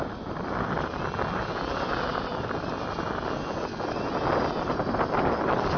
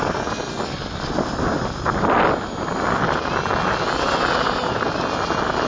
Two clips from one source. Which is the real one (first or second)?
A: second